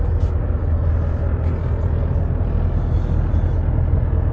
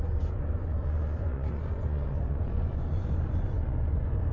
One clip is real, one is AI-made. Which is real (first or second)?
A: first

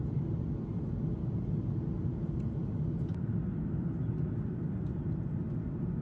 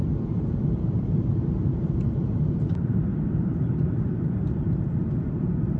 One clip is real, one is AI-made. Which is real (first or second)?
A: first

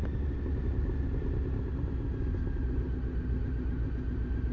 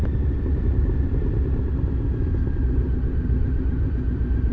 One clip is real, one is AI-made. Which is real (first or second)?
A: first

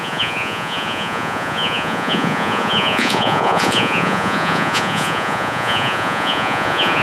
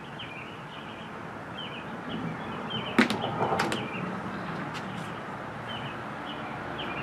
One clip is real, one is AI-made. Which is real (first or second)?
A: second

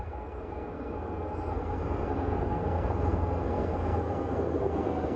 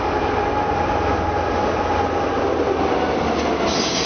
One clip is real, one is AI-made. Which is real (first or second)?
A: second